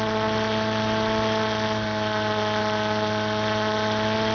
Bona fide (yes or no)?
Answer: yes